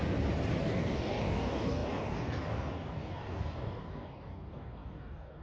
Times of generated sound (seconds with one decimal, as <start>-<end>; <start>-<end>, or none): 0.6-5.4